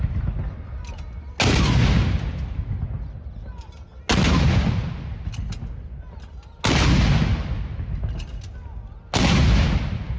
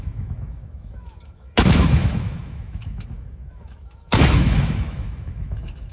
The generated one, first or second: second